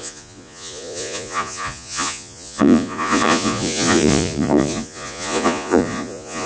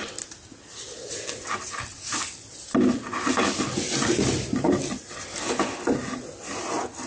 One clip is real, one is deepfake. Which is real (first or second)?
second